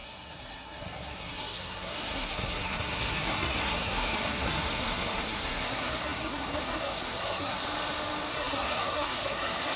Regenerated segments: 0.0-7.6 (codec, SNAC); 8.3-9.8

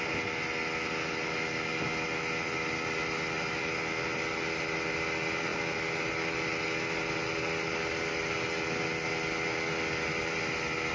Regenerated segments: none

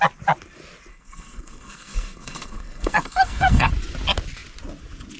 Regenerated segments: 0.9-3.7 (codec, SNAC)